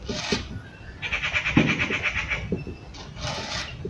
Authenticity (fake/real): real